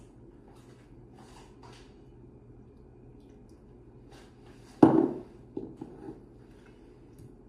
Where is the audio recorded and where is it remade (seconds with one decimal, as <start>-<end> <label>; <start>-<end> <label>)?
0.0-7.5 recorded